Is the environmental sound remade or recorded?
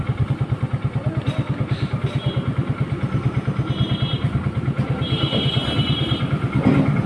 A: recorded